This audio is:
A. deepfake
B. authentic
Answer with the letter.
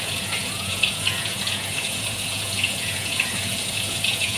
A